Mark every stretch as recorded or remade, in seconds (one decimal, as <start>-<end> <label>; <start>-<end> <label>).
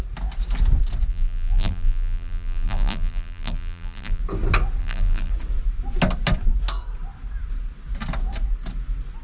0.0-1.1 recorded; 1.1-4.2 remade; 4.2-4.8 recorded; 4.8-5.3 remade; 5.3-9.2 recorded